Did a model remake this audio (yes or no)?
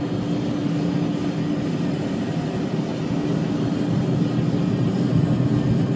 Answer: no